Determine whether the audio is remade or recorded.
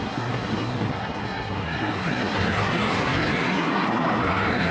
remade